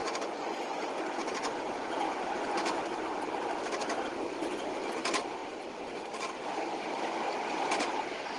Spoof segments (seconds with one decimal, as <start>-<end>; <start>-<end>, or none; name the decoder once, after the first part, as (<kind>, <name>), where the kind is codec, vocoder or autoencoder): 0.0-2.8 (vocoder, Vocos)